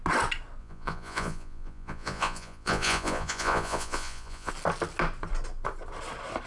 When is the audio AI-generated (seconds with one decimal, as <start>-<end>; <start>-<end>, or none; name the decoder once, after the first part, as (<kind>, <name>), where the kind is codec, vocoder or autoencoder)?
0.6-4.5 (vocoder, Vocos)